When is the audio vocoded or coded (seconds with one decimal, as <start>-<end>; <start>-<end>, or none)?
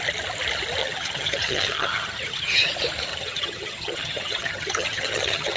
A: 0.8-2.7; 3.1-5.6